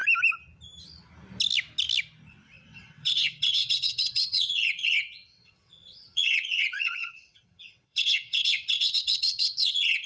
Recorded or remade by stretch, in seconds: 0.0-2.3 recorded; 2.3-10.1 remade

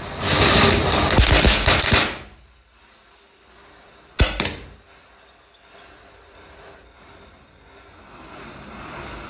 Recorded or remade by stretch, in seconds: 0.0-9.3 recorded

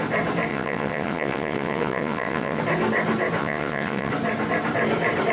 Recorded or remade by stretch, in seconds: 0.0-0.5 recorded; 0.5-2.6 remade; 2.6-3.4 recorded; 3.4-4.1 remade; 4.1-5.3 recorded

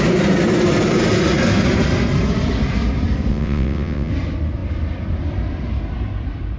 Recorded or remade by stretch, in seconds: 0.0-3.3 recorded; 3.3-4.1 remade; 4.1-6.6 recorded

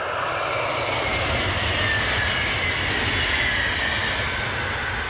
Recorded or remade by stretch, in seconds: 0.0-5.1 recorded

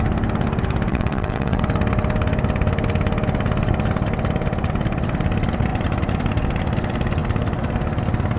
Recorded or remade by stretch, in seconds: 0.0-0.9 recorded; 0.9-1.6 remade; 1.6-8.4 recorded

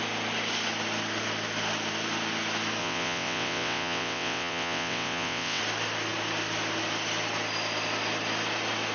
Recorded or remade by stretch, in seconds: 0.0-2.8 recorded; 2.8-5.6 remade; 5.6-8.9 recorded